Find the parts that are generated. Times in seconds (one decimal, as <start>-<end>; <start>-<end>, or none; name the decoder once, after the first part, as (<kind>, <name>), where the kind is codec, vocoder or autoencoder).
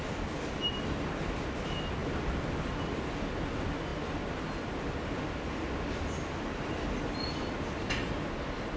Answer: none